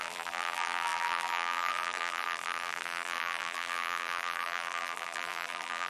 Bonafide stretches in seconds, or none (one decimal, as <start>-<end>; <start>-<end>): none